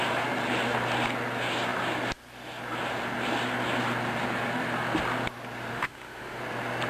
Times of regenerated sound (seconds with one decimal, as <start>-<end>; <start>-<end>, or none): 5.7-6.4